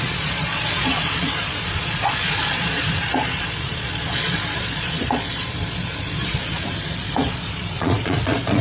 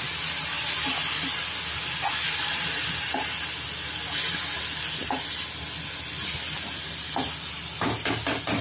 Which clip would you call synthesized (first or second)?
first